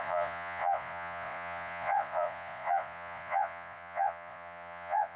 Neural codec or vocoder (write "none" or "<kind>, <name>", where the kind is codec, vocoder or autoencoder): vocoder, Vocos